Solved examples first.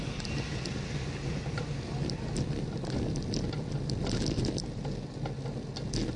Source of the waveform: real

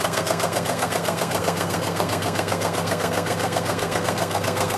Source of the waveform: fake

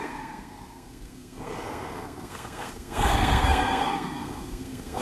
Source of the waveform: fake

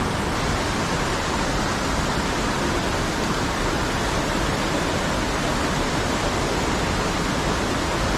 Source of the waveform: real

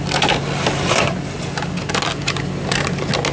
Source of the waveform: real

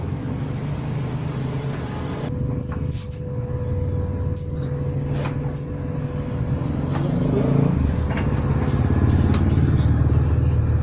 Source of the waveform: real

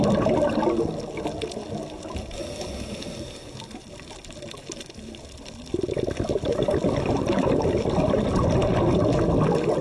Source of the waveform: real